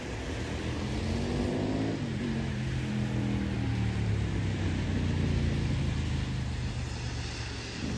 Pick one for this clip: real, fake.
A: real